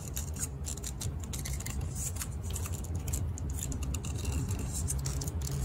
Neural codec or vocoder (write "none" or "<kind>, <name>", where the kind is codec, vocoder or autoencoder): none